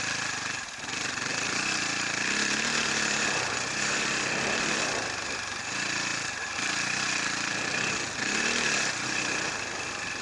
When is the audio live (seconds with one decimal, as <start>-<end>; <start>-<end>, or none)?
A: 0.0-10.2